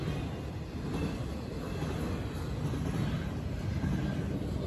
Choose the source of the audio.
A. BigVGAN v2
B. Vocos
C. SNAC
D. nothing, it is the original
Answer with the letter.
D